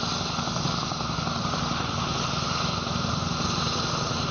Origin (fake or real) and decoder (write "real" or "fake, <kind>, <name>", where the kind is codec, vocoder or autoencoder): real